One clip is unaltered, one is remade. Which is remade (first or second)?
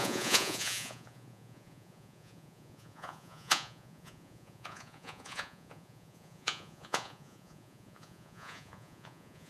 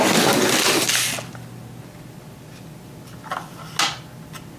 first